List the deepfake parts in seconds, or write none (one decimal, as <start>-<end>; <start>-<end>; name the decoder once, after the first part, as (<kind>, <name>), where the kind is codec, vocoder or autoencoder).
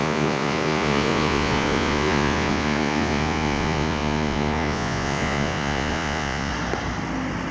0.0-6.5 (vocoder, Vocos)